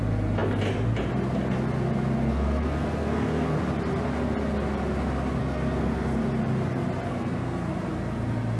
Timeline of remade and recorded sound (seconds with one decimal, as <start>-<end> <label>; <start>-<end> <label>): 0.0-2.2 recorded; 2.2-3.6 remade; 3.6-5.4 recorded; 5.4-6.2 remade; 6.2-7.1 recorded; 7.1-7.7 remade; 7.7-8.6 recorded